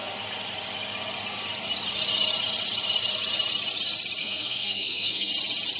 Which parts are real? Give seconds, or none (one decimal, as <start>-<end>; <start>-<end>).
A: 0.0-4.2; 5.3-5.8